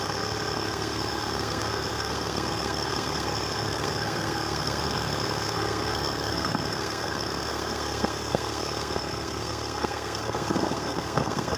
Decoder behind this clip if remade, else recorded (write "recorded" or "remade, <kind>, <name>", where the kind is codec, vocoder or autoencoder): remade, codec, SNAC